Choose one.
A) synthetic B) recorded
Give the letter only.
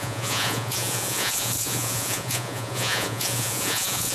A